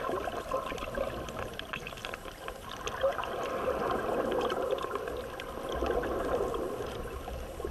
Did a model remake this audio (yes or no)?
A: no